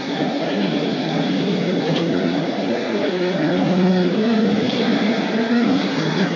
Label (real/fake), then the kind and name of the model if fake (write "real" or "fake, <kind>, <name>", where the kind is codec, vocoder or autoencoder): fake, codec, SNAC